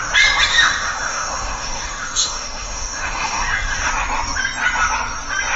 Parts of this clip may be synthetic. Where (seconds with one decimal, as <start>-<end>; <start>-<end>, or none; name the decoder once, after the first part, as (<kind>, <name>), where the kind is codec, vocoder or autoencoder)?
0.5-3.9 (autoencoder, DAC-VAE)